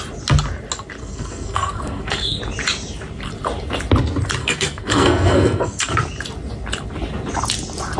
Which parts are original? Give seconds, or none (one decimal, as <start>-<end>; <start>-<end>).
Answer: 0.0-1.0; 2.4-4.4; 5.9-8.0